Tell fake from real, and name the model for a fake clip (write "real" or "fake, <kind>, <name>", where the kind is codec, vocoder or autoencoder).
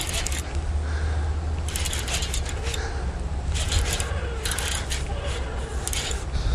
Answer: real